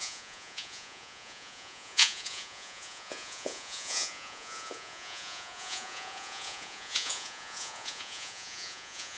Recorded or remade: remade